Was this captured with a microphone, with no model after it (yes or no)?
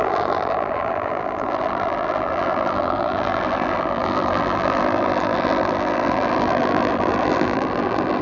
no